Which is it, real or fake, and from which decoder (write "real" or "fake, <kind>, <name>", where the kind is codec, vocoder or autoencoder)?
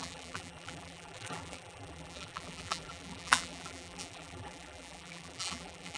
fake, vocoder, BigVGAN v2